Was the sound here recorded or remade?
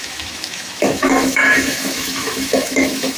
remade